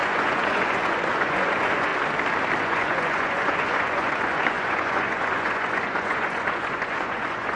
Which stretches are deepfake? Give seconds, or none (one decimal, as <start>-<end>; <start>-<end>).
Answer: 0.0-1.9; 2.6-7.6